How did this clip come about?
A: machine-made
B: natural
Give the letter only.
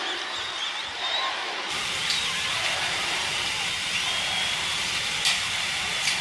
A